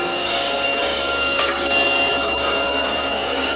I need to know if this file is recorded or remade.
remade